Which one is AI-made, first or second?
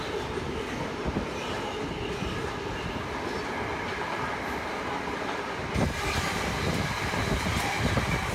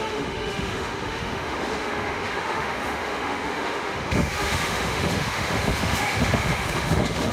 second